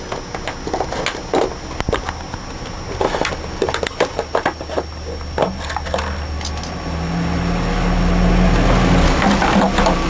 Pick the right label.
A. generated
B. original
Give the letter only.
B